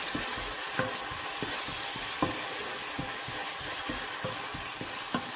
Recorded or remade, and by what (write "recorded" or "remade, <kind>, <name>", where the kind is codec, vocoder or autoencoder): recorded